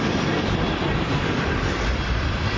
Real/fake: real